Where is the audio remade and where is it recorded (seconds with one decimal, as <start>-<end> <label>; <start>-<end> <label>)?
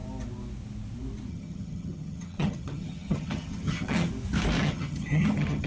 0.0-1.3 recorded; 1.3-4.1 remade; 4.1-4.6 recorded; 4.6-5.7 remade